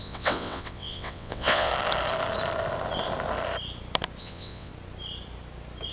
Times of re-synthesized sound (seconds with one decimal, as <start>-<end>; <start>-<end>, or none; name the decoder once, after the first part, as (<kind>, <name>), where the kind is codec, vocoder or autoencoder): 0.0-1.7 (vocoder, WaveNeXt); 4.2-4.7